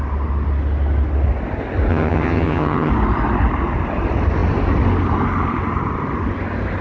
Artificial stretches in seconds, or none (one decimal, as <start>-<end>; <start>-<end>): 1.9-2.9